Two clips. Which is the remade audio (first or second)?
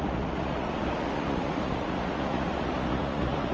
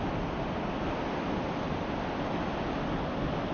first